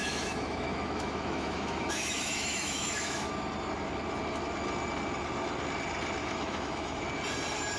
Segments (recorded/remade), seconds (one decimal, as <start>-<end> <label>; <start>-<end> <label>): 0.0-3.3 remade; 3.3-6.2 recorded; 6.2-7.0 remade; 7.0-7.8 recorded